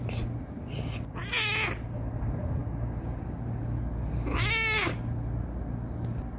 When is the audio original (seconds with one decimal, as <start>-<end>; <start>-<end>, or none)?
0.0-6.4